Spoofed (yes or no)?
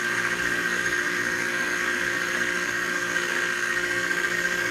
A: yes